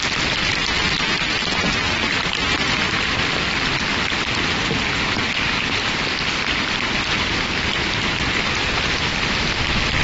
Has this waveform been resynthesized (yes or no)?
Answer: no